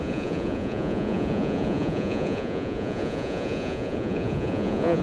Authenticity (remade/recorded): remade